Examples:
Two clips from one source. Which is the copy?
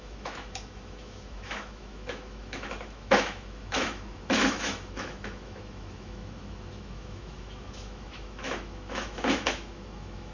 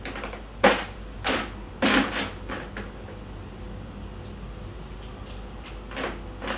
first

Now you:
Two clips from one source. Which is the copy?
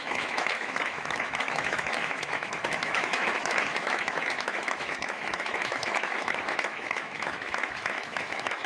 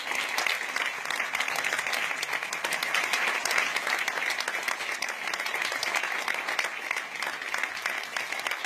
first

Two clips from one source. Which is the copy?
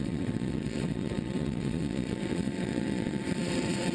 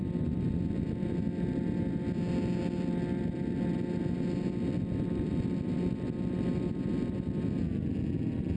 first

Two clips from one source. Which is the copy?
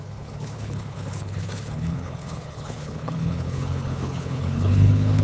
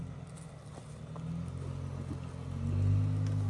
first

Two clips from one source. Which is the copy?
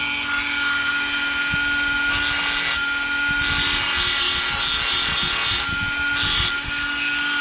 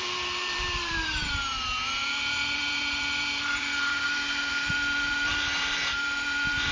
second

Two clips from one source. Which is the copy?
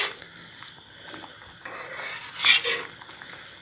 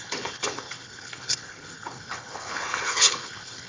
second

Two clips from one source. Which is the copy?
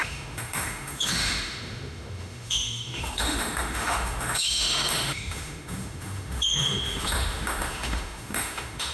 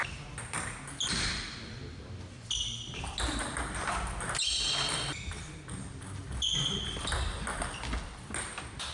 first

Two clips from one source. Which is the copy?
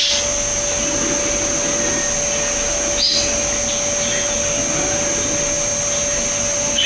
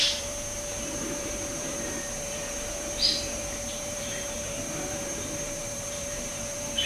second